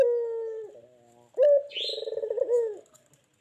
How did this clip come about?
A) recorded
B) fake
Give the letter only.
A